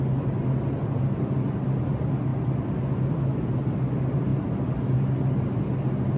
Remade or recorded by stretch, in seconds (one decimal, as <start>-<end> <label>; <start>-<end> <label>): 0.0-6.2 recorded